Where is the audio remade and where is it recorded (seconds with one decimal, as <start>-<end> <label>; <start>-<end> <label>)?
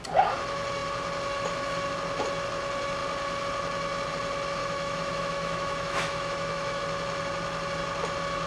0.0-4.6 recorded; 4.6-6.8 remade; 6.8-8.5 recorded